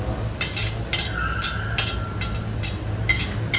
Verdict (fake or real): real